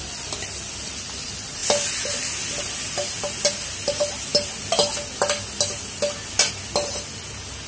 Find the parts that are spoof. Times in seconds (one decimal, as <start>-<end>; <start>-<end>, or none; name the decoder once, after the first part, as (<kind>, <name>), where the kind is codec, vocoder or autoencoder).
none

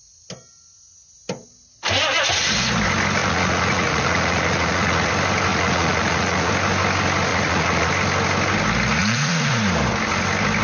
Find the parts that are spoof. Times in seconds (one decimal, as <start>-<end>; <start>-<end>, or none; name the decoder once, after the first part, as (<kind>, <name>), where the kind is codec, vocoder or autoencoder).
3.2-5.1 (vocoder, Vocos); 5.5-6.5; 7.3-7.9; 9.0-9.5

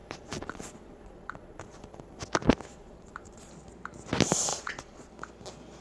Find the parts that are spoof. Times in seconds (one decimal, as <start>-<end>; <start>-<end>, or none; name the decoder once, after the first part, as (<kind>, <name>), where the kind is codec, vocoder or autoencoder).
0.0-2.2 (vocoder, Vocos); 2.7-3.5; 4.5-5.1

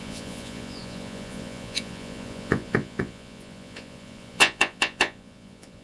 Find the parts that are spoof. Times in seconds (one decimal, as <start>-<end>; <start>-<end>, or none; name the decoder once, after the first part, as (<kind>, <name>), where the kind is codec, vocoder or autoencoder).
0.0-5.8 (vocoder, Vocos)

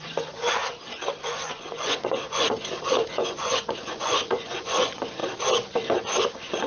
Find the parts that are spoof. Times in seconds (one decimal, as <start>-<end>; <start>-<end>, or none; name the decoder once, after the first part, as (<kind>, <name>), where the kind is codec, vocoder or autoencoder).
0.0-0.6 (vocoder, Vocos); 1.2-5.2; 6.3-6.7

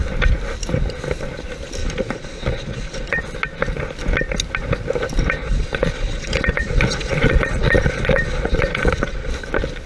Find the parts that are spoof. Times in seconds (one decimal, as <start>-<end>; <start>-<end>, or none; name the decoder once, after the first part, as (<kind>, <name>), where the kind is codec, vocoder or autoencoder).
1.8-3.2 (vocoder, Vocos); 5.4-9.3

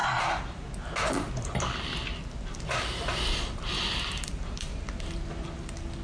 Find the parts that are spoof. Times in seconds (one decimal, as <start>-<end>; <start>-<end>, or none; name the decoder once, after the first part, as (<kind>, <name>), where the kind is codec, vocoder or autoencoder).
none